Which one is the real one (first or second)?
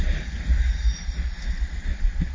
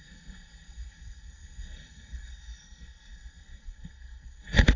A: first